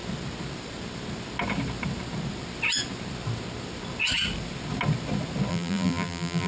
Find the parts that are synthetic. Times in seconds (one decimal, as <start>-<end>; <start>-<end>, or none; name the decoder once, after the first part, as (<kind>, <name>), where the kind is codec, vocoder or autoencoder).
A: 5.5-6.5 (vocoder, BigVGAN v2)